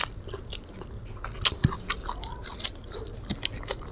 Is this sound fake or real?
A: real